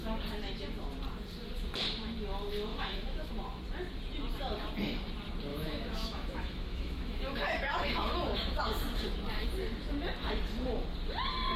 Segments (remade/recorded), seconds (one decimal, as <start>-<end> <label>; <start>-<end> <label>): 0.0-2.7 recorded; 2.7-3.3 remade; 3.3-5.5 recorded; 5.5-8.6 remade; 8.6-11.6 recorded